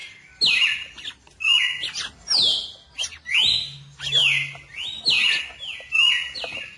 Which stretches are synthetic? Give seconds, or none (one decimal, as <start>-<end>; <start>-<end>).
none